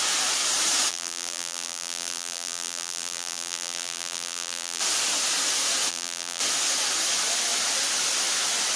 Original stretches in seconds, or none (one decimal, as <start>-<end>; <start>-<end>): 0.0-0.9; 4.8-5.9; 6.4-8.8